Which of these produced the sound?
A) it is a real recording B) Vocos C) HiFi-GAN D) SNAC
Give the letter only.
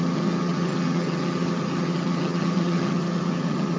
C